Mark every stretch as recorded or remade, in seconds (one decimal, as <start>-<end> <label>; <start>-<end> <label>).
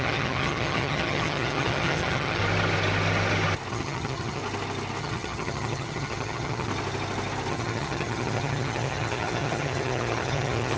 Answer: 0.0-2.4 remade; 2.4-3.7 recorded; 3.7-4.4 remade; 4.4-5.0 recorded; 5.0-6.7 remade; 6.7-7.5 recorded; 7.5-10.8 remade